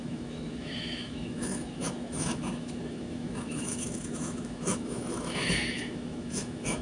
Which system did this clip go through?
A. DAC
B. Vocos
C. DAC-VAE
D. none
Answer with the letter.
C